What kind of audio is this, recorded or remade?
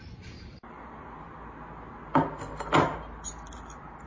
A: recorded